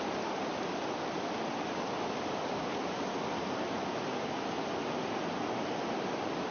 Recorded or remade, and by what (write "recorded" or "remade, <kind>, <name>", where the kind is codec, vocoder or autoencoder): recorded